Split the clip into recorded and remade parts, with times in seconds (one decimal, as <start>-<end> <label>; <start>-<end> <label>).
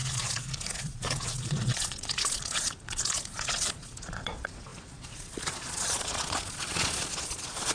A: 0.0-7.7 remade